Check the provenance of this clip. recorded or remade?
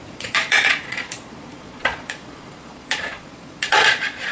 remade